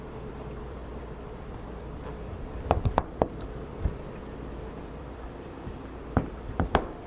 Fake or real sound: fake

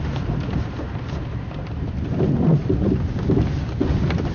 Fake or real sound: real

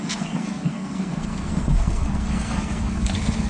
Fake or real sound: fake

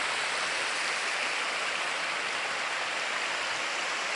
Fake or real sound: real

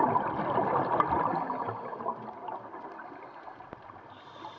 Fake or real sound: real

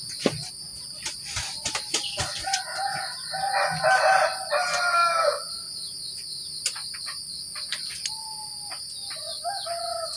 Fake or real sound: real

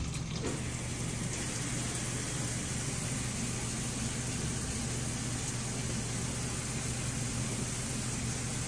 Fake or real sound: real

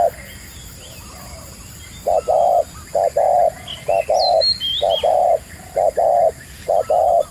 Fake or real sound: real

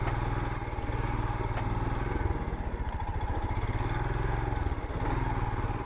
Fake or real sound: real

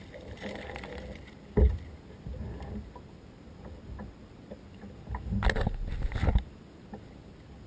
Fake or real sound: real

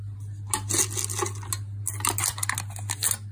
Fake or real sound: real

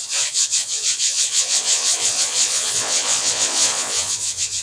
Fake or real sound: fake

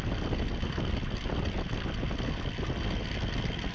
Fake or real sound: real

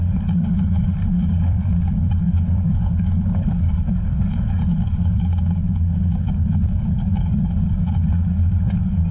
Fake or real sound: fake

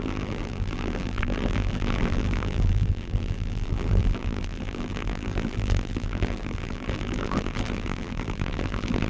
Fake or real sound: fake